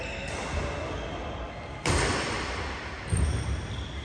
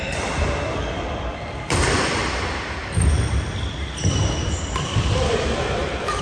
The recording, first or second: first